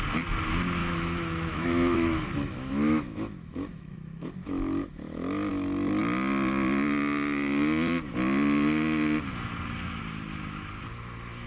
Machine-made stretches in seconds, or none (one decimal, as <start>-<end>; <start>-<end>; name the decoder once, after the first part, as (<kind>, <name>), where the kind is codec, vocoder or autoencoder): 0.8-5.5 (autoencoder, DAC-VAE)